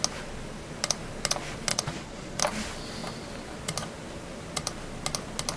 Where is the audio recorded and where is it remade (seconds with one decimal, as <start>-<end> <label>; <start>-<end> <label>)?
0.0-1.7 recorded; 1.7-2.4 remade; 2.4-5.6 recorded